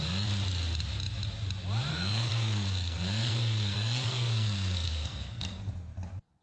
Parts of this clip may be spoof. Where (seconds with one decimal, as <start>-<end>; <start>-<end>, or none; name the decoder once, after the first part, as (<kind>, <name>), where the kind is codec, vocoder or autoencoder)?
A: 1.9-5.7 (codec, SNAC)